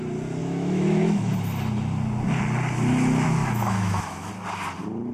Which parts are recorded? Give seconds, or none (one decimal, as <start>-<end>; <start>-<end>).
0.0-0.4; 1.3-3.4; 4.3-5.1